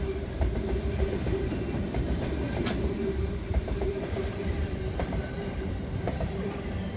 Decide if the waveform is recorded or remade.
remade